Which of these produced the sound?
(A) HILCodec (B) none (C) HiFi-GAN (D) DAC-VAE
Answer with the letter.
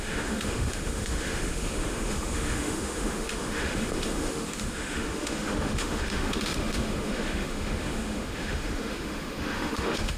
D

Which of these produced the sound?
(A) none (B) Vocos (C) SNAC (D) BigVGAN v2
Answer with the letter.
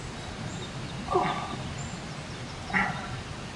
A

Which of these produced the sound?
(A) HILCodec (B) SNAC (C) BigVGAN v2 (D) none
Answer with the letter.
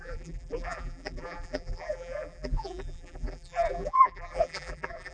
C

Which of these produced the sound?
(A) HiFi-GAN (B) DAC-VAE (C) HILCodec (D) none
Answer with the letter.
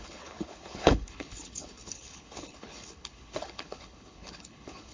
C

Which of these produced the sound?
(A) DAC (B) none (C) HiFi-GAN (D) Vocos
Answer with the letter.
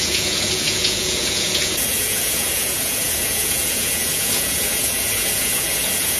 D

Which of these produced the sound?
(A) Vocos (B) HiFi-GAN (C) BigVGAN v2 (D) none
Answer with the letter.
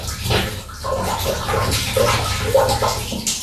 D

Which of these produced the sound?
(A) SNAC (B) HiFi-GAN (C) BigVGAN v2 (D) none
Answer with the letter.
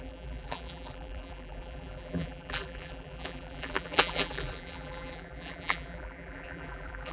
C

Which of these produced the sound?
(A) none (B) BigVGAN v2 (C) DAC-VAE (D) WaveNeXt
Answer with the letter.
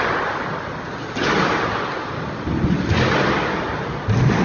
A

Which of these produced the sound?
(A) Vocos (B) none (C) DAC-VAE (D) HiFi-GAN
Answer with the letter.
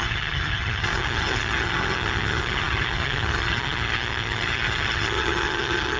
D